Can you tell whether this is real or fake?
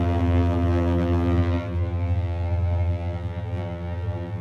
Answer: fake